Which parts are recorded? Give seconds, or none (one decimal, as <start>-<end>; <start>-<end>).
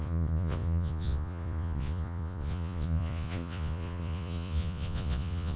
none